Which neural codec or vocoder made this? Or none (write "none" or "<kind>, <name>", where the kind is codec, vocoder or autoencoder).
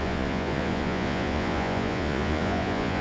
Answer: vocoder, Vocos